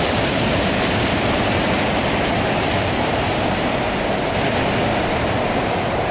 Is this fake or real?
real